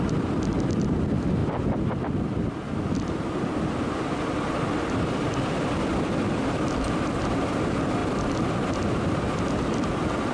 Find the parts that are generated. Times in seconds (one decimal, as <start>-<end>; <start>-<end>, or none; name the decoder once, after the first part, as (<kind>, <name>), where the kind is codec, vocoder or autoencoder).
none

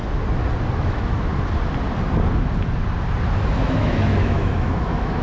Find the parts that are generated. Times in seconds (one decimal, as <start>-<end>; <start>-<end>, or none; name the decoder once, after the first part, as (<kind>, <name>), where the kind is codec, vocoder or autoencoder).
0.7-1.3 (autoencoder, DAC-VAE); 3.6-5.2

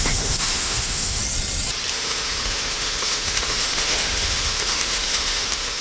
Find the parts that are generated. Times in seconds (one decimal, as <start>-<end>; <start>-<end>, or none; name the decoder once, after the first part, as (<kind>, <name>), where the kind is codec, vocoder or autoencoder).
0.0-1.2 (autoencoder, DAC-VAE); 1.9-5.8

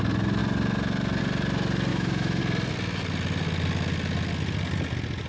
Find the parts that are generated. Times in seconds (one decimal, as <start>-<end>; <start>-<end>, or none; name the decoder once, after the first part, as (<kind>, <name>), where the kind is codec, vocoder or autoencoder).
1.9-2.4 (autoencoder, DAC-VAE)